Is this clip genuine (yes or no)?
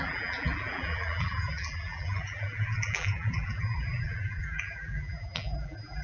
no